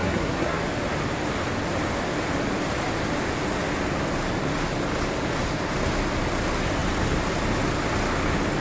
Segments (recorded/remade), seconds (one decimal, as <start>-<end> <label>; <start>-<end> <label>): 0.0-0.6 remade; 0.6-8.6 recorded